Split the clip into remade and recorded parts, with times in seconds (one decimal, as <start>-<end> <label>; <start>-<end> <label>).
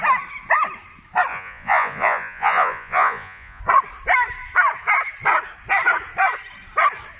0.0-1.3 recorded; 1.3-3.6 remade; 3.6-7.2 recorded